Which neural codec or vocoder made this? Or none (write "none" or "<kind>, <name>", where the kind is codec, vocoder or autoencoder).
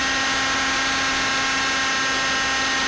none